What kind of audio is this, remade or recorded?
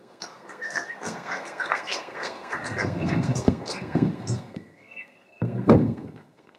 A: remade